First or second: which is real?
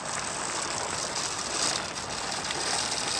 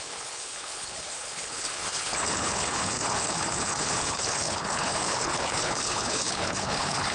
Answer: first